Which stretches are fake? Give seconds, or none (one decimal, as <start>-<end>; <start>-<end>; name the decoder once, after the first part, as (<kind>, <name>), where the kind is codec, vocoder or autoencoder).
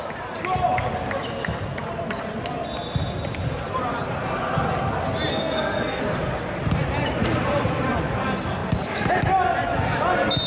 5.3-6.0 (codec, SNAC)